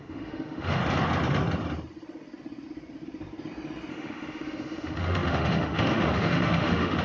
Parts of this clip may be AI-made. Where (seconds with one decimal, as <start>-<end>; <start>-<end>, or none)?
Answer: 0.0-0.8; 3.9-7.0